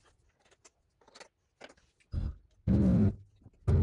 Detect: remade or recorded recorded